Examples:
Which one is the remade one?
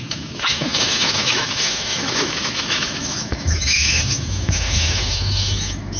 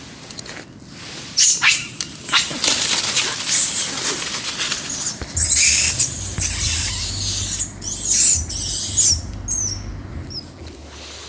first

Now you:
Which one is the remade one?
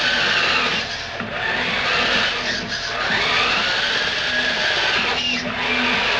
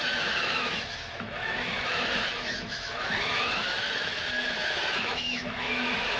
second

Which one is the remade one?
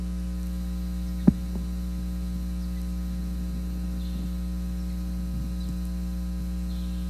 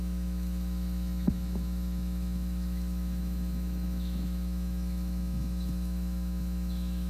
second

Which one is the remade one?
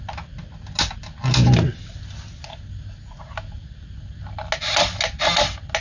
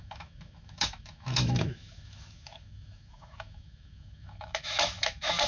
second